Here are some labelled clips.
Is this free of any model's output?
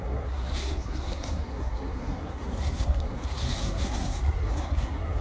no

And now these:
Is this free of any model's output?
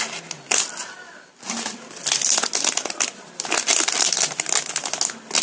yes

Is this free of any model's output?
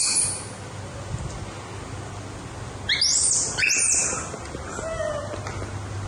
yes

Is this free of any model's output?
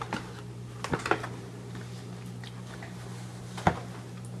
yes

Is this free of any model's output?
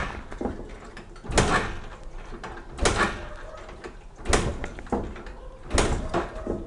yes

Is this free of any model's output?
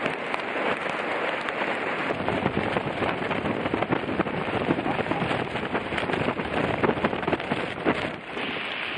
no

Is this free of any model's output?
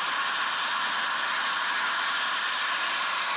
yes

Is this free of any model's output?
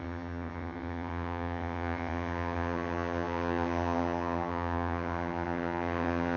no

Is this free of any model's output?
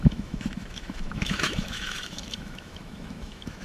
no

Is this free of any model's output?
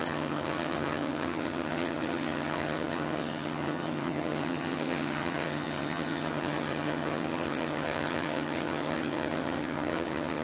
no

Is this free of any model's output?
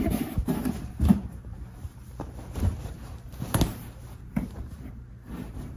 no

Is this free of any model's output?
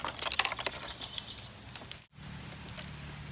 yes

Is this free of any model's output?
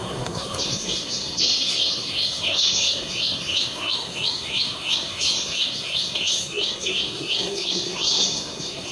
no